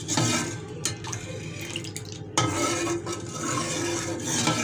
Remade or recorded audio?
recorded